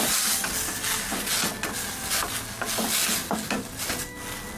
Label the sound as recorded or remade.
recorded